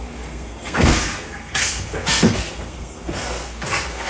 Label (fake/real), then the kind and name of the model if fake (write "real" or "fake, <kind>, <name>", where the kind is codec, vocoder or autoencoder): fake, codec, SNAC